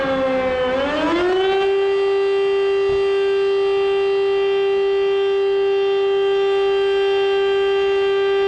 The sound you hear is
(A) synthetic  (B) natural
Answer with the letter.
B